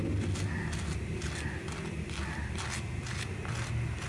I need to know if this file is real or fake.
real